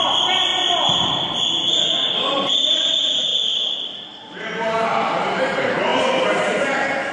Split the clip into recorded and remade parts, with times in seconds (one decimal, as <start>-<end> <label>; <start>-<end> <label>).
0.0-7.1 remade